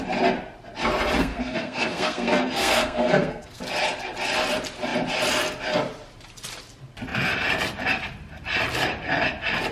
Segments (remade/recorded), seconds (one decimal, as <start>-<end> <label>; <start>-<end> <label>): 0.0-1.2 recorded; 1.2-3.6 remade; 3.6-9.7 recorded

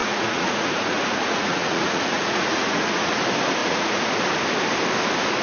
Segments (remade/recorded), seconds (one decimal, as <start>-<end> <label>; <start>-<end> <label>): 0.0-3.2 remade; 3.2-3.6 recorded; 3.6-4.1 remade; 4.1-5.4 recorded

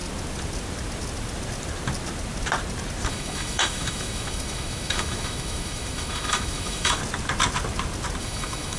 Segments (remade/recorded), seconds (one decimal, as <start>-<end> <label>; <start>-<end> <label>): 0.0-3.1 recorded; 3.1-7.0 remade; 7.0-8.2 recorded; 8.2-8.8 remade

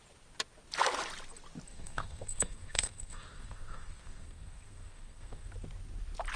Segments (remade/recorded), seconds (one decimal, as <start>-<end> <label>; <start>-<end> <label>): 0.0-1.7 recorded; 1.7-5.5 remade; 5.5-6.4 recorded

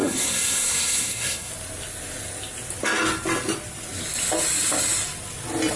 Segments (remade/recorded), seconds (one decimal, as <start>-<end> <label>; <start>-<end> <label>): 0.0-1.5 remade; 1.5-5.8 recorded

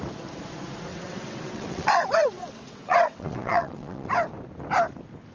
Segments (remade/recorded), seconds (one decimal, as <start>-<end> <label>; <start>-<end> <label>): 0.0-0.9 recorded; 0.9-4.1 remade; 4.1-5.3 recorded

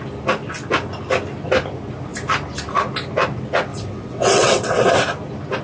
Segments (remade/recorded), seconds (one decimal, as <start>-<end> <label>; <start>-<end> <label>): 0.0-3.7 recorded; 3.7-4.9 remade; 4.9-5.6 recorded